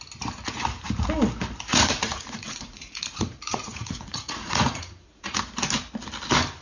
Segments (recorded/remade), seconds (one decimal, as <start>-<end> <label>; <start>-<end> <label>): 0.0-1.7 recorded; 1.7-5.4 remade; 5.4-6.6 recorded